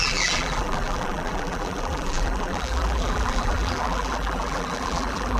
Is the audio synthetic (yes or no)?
yes